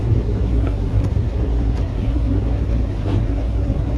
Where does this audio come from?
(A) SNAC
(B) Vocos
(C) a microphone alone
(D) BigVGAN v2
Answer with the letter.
A